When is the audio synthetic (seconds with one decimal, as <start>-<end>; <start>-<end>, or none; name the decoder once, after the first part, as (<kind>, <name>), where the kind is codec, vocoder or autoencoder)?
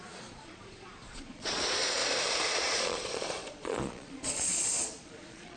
0.0-2.0 (vocoder, Vocos); 2.5-5.6